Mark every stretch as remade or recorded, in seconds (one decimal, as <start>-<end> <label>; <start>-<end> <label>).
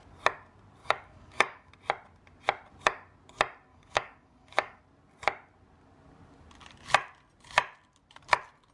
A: 0.0-0.8 recorded; 0.8-1.7 remade; 1.7-3.7 recorded; 3.7-4.8 remade; 4.8-8.7 recorded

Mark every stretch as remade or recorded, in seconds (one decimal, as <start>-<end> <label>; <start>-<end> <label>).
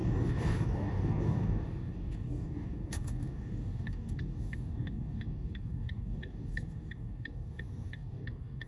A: 0.0-8.7 remade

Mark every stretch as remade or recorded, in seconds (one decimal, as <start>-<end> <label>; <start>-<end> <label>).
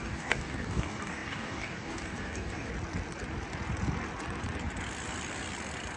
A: 0.0-2.7 remade; 2.7-6.0 recorded